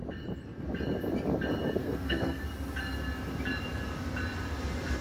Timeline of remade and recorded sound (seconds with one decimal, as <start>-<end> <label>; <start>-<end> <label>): 0.0-1.8 recorded; 1.8-2.4 remade; 2.4-5.0 recorded